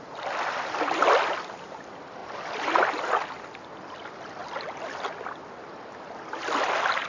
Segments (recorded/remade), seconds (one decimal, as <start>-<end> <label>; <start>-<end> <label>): 0.0-7.1 recorded